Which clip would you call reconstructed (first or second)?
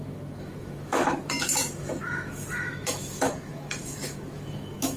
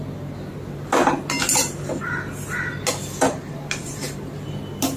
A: first